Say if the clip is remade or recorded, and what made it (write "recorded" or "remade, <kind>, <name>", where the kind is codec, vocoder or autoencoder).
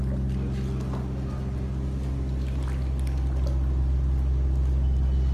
recorded